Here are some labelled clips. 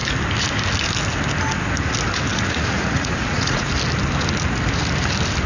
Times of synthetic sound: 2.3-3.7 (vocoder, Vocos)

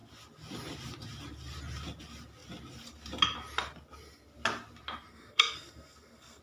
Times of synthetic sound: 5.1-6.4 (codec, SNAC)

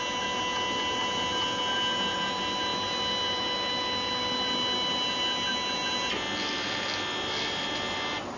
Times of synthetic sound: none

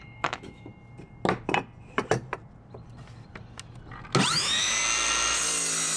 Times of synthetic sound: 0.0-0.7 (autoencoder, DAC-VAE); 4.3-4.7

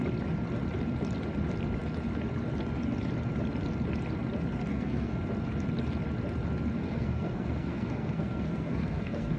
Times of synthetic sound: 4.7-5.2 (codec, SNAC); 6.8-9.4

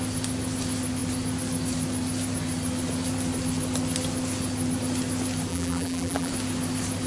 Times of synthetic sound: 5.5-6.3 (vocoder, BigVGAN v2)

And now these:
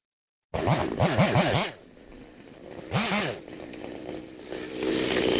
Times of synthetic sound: none

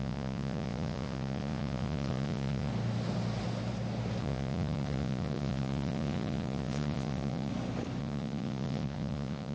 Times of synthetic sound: 0.0-2.7 (vocoder, Vocos); 4.2-7.5; 8.0-9.5